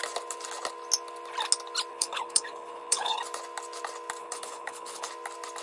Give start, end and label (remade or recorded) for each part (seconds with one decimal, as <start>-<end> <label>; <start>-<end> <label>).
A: 0.0-1.9 recorded; 1.9-3.2 remade; 3.2-4.2 recorded; 4.2-5.1 remade; 5.1-5.6 recorded